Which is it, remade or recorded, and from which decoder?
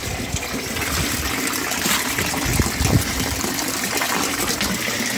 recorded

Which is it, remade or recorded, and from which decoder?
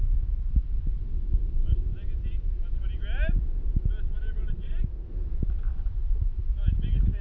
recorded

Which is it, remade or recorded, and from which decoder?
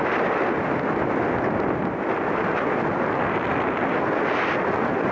recorded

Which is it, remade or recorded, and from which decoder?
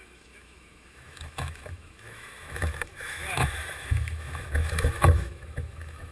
remade, autoencoder, DAC-VAE